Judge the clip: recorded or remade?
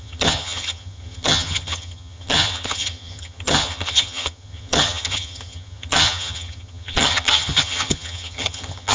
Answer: remade